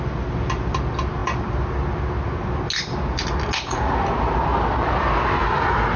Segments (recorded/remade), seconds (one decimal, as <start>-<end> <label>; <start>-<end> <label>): 0.0-6.0 recorded